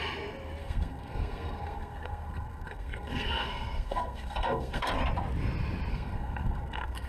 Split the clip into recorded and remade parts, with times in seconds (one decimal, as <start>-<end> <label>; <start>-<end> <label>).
0.0-0.6 recorded; 0.6-4.9 remade; 4.9-5.9 recorded; 5.9-7.1 remade